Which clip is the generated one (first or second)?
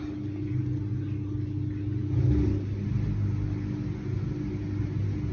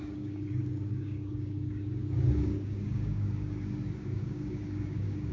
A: second